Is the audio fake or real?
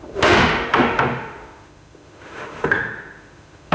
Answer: fake